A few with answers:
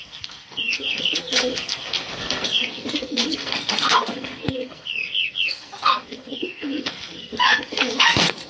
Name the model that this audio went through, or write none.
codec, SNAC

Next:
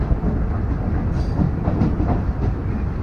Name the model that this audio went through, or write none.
none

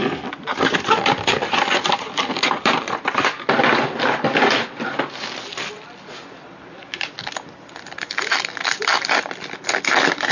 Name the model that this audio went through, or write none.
none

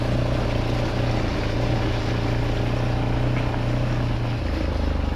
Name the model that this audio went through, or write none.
none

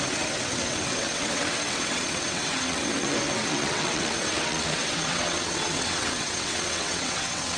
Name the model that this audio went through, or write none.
vocoder, WaveNeXt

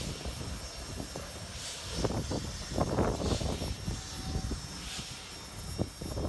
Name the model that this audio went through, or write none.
none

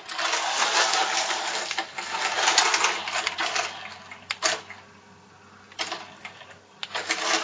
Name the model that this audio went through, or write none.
none